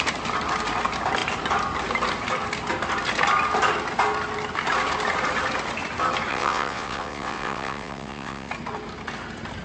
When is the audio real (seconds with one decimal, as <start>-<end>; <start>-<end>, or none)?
0.0-6.3; 8.5-9.6

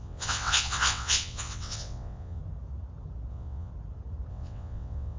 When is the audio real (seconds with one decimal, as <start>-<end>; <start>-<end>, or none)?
2.4-3.3; 3.7-4.3

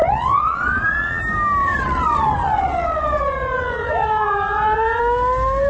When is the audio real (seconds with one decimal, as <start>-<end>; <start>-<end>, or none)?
1.2-1.6; 5.0-5.7

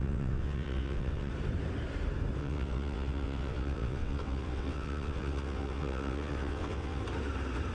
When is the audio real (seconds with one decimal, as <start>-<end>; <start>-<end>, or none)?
1.3-2.4; 7.0-7.7

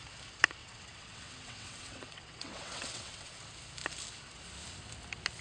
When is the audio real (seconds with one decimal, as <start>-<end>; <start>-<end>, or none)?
0.0-0.6; 3.4-5.4

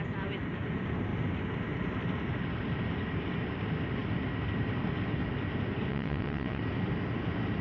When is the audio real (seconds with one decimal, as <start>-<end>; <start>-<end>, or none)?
0.0-5.9; 6.6-7.6

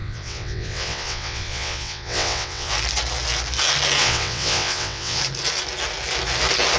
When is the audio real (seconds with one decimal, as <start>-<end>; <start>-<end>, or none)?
2.7-4.0; 5.2-6.8